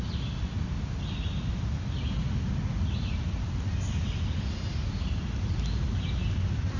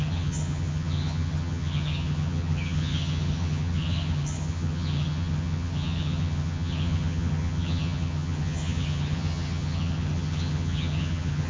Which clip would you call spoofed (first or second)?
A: second